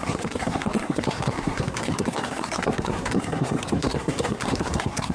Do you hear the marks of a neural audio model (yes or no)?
yes